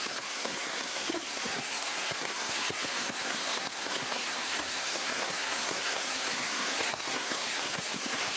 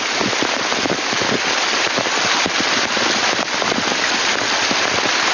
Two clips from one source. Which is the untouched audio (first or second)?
second